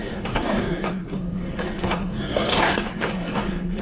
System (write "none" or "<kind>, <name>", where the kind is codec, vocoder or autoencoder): codec, SNAC